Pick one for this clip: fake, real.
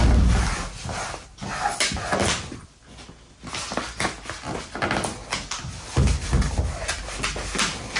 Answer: real